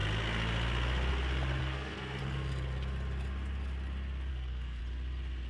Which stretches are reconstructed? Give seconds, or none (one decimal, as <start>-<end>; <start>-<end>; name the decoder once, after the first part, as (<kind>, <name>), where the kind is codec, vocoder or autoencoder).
1.6-2.2 (codec, SNAC); 4.3-4.8